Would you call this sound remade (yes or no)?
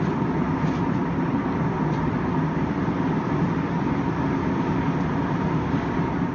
no